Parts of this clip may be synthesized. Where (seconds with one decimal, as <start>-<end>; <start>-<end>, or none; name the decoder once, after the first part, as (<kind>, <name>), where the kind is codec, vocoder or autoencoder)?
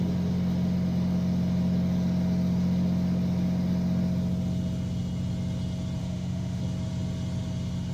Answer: 6.0-6.6 (autoencoder, DAC-VAE)